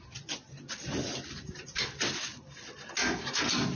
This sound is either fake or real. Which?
real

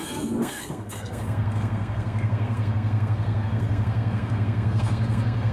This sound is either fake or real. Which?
fake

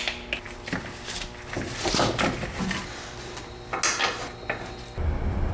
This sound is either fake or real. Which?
real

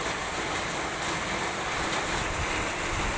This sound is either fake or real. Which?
real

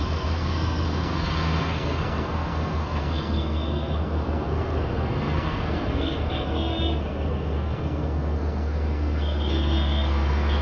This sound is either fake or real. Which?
fake